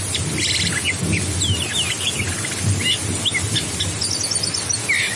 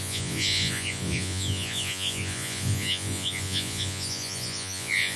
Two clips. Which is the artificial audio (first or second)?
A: second